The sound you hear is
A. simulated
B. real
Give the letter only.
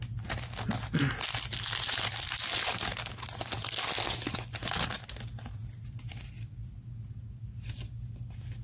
B